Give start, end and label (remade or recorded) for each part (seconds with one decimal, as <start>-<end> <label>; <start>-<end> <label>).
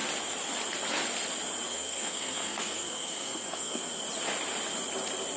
0.0-1.7 recorded; 1.7-4.0 remade; 4.0-5.4 recorded